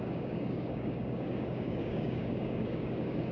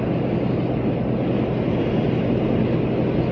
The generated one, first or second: first